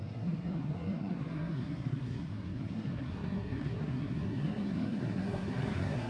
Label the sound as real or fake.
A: fake